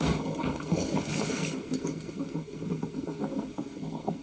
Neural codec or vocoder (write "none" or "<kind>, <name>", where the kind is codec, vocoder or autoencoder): codec, SNAC